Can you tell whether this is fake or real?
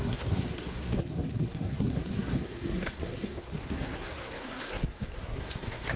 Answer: fake